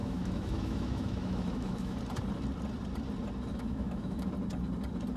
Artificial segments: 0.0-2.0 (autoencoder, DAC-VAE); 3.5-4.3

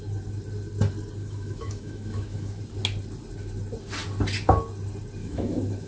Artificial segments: 1.2-2.6 (autoencoder, DAC-VAE); 5.2-5.9

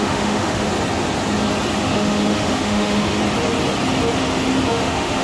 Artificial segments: 0.0-0.7 (autoencoder, DAC-VAE); 1.8-3.2; 4.7-5.2

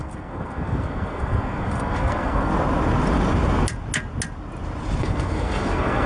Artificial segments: 0.0-2.5 (codec, SNAC); 5.0-6.1

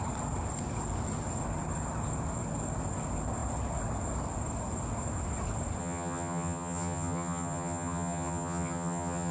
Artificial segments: 5.8-9.3 (vocoder, HiFi-GAN)

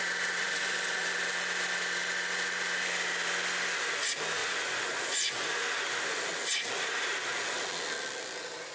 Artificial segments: 0.4-1.0 (vocoder, Vocos); 4.4-5.9

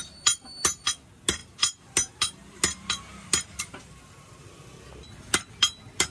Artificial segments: none

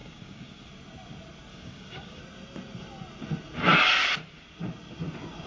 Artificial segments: 0.0-0.7 (codec, DAC); 1.5-2.2